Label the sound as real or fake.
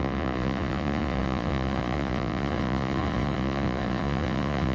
fake